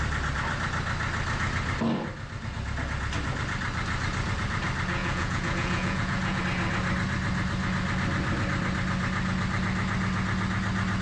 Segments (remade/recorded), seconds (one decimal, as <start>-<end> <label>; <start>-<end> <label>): 0.0-5.0 recorded; 5.0-6.4 remade; 6.4-11.0 recorded